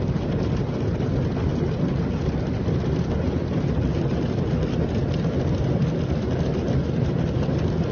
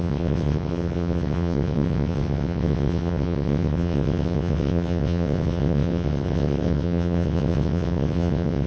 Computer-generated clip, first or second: second